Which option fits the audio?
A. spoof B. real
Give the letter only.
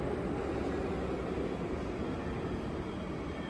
B